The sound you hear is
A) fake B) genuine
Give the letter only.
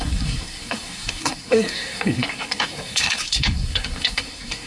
A